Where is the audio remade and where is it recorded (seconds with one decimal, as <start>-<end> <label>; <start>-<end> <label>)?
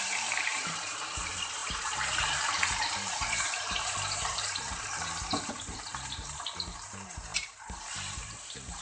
0.0-8.8 remade